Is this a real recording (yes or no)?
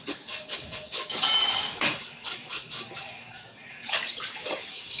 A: no